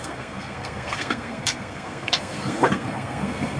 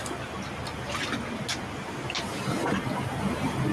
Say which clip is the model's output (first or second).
first